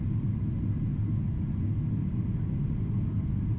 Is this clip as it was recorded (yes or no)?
yes